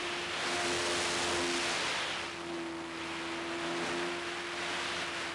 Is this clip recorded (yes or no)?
yes